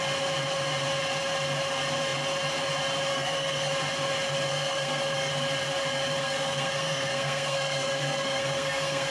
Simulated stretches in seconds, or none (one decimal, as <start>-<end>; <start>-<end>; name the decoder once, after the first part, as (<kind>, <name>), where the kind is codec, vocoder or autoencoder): 3.1-3.7 (codec, SNAC); 4.5-5.3; 6.2-9.1